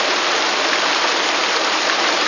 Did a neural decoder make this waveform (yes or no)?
no